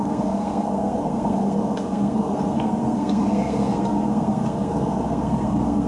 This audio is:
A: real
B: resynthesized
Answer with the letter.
B